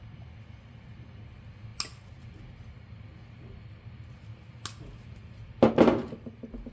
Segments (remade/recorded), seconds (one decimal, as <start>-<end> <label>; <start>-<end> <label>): 0.0-6.7 recorded